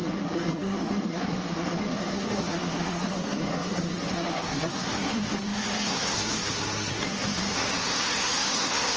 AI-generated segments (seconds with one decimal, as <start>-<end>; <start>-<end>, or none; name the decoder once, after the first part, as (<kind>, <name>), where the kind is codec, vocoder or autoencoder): 0.0-9.0 (codec, SNAC)